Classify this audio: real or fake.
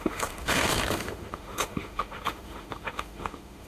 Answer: fake